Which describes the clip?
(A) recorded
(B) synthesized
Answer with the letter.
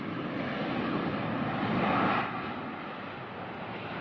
A